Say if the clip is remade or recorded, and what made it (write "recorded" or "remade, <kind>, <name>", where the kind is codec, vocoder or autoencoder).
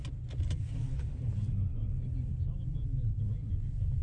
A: recorded